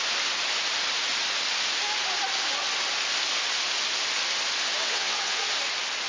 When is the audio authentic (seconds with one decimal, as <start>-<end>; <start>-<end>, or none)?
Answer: 0.0-4.8; 5.4-6.1